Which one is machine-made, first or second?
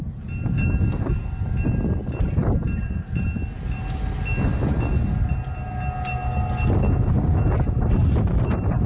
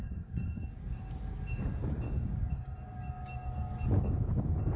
second